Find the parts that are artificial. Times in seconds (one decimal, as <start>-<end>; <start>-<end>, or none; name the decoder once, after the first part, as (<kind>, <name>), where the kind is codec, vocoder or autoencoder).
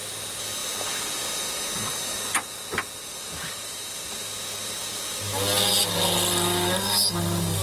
none